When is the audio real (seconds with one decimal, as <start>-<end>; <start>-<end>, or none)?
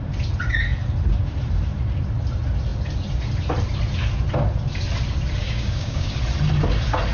0.0-5.4; 6.1-7.1